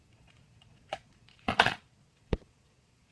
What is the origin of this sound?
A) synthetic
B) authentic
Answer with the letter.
A